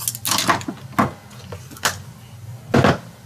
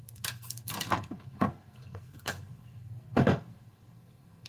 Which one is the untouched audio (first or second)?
first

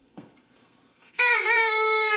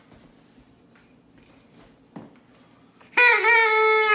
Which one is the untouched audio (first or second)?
second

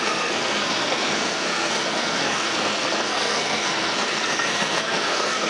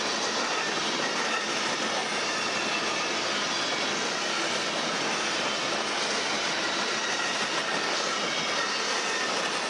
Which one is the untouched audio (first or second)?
second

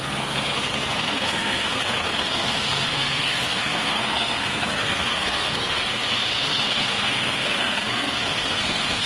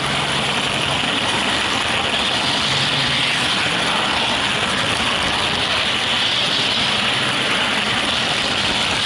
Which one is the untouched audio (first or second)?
second